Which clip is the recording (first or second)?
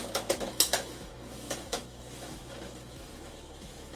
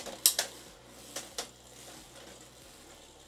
second